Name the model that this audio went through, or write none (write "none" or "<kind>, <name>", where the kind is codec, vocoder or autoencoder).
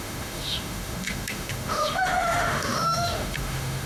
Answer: autoencoder, DAC-VAE